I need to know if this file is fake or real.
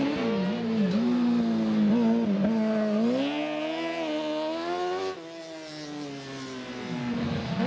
real